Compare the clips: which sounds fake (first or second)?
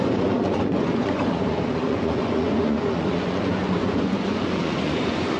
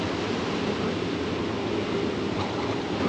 first